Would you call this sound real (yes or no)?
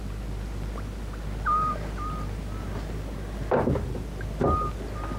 yes